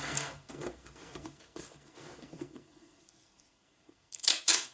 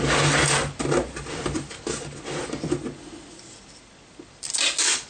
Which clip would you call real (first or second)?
second